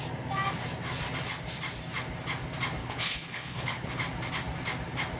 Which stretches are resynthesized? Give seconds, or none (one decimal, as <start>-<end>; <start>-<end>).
2.8-3.9

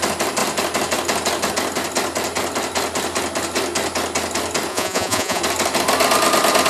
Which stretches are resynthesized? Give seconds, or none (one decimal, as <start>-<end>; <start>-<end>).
4.7-5.4